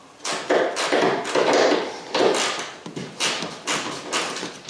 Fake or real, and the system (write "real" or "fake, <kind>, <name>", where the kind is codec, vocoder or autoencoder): real